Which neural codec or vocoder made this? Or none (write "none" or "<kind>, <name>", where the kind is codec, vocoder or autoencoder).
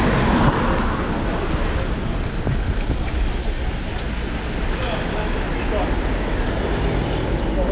none